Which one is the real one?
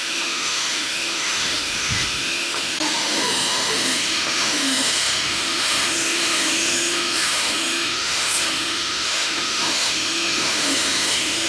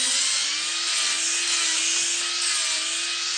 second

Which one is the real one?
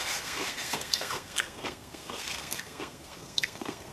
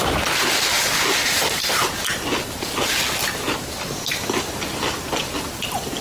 second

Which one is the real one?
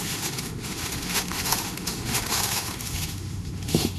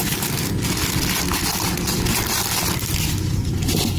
second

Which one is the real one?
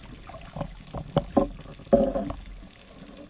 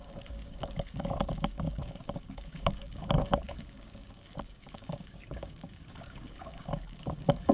first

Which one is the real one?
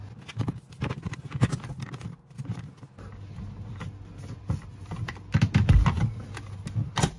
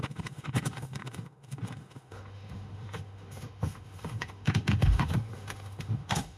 first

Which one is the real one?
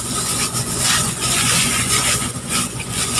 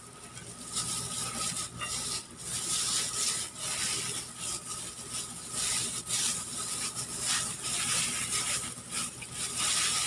second